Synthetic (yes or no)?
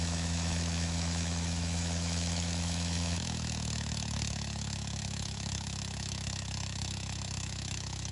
yes